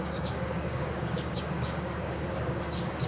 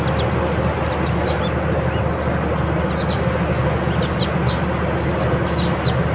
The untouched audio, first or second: second